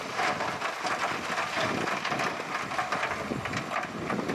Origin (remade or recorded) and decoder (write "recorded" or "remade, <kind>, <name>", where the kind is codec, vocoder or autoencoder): recorded